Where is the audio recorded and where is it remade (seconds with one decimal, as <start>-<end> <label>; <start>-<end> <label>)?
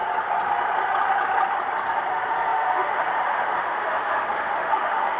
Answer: 0.0-2.1 recorded; 2.1-5.2 remade